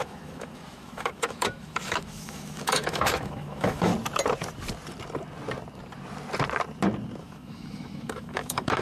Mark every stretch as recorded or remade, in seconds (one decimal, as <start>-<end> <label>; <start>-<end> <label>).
0.0-3.9 remade; 3.9-7.2 recorded; 7.2-8.8 remade